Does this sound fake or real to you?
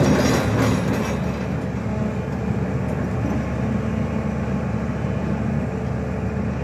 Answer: real